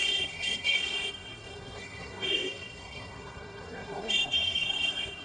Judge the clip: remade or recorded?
remade